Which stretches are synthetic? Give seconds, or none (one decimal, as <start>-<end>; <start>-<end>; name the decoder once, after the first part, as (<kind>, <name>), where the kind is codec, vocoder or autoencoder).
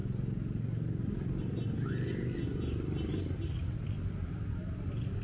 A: none